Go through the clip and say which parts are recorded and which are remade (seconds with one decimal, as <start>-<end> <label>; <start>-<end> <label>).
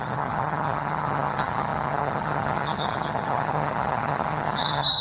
0.0-5.0 remade